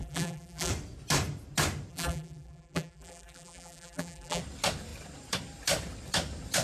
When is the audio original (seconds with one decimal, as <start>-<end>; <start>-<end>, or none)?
0.7-1.9; 4.4-6.6